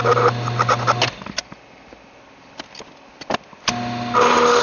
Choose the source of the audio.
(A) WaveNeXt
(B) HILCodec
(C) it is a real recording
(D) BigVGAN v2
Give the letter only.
C